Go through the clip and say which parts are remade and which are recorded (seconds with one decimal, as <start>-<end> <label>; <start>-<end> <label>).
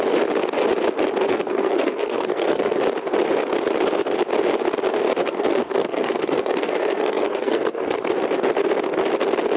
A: 0.0-1.3 recorded; 1.3-2.7 remade; 2.7-5.2 recorded; 5.2-8.1 remade; 8.1-9.6 recorded